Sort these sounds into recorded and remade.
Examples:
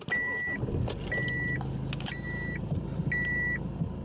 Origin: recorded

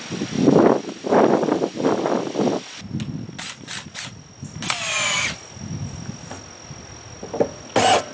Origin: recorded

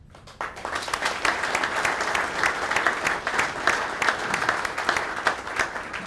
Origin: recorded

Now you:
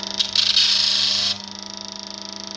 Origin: recorded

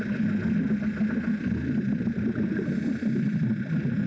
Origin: recorded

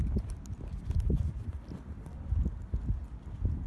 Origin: recorded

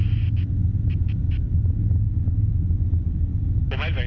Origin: recorded